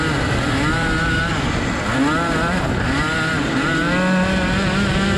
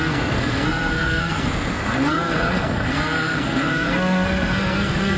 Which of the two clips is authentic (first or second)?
first